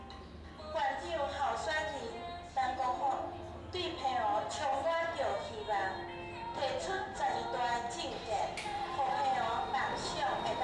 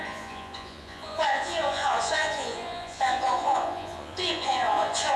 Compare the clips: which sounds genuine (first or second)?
first